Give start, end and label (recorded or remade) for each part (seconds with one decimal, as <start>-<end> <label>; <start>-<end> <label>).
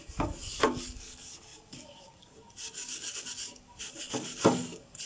0.0-5.1 remade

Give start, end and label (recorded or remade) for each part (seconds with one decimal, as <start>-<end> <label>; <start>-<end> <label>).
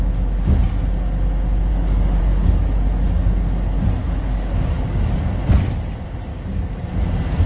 0.0-1.7 recorded; 1.7-2.2 remade; 2.2-4.0 recorded; 4.0-5.2 remade; 5.2-6.3 recorded; 6.3-6.9 remade; 6.9-7.5 recorded